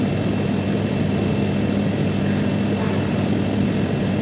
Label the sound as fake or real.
real